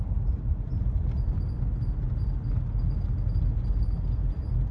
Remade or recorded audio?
recorded